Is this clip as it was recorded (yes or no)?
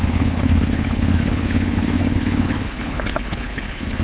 no